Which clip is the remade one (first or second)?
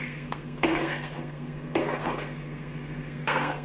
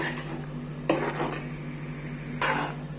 first